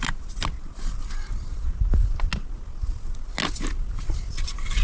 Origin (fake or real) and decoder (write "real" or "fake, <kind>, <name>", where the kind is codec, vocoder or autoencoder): real